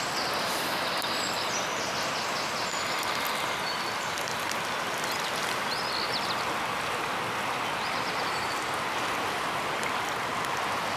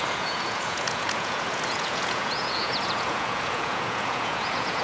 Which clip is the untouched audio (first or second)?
first